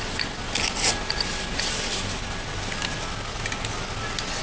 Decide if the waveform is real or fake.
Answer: real